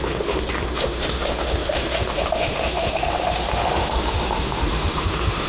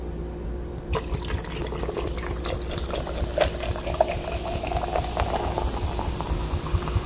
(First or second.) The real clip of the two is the second